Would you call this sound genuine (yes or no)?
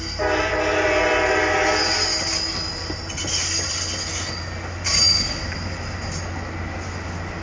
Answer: yes